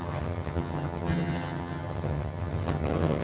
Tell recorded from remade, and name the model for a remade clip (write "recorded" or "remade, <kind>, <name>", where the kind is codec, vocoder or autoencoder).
remade, vocoder, HiFi-GAN